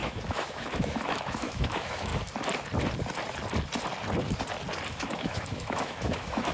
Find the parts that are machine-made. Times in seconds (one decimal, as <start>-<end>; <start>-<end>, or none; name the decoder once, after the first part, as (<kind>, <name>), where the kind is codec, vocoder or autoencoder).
0.0-2.1 (autoencoder, DAC-VAE); 4.9-6.5